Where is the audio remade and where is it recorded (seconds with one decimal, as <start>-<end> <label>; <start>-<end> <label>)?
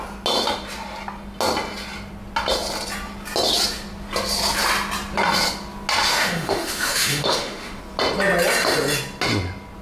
0.0-6.1 recorded; 6.1-7.8 remade; 7.8-9.8 recorded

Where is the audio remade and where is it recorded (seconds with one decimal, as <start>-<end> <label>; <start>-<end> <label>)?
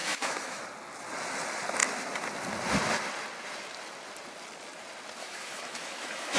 0.0-0.6 remade; 0.6-5.2 recorded; 5.2-6.4 remade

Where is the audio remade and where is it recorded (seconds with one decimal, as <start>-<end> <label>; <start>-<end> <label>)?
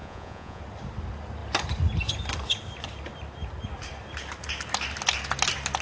0.0-0.6 remade; 0.6-5.8 recorded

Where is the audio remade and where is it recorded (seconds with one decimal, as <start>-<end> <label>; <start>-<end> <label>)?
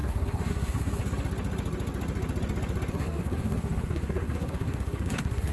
0.0-1.0 remade; 1.0-2.9 recorded; 2.9-5.5 remade